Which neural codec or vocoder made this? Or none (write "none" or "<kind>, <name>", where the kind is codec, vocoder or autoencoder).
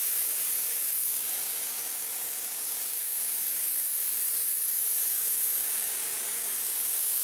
codec, DAC